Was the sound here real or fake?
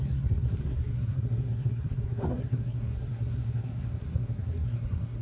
fake